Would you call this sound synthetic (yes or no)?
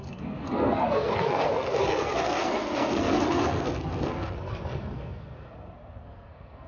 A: yes